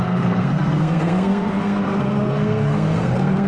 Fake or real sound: fake